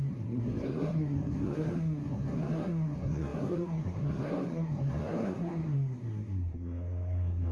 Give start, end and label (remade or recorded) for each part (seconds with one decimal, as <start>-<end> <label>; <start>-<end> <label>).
0.0-7.5 remade